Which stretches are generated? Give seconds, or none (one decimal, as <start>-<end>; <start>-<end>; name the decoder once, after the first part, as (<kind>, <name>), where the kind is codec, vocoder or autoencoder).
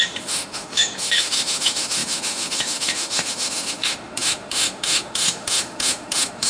0.0-6.5 (autoencoder, DAC-VAE)